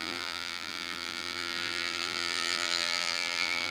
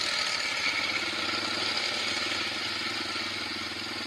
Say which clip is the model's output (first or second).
first